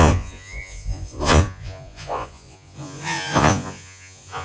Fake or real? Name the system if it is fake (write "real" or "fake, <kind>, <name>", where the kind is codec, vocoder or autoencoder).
fake, vocoder, Vocos